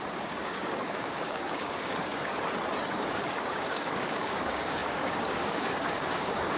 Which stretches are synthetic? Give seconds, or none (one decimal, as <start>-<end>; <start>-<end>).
0.0-2.3; 2.9-6.6